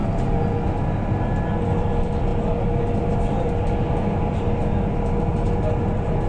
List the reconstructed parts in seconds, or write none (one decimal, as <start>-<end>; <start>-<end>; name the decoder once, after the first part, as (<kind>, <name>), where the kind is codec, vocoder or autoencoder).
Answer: none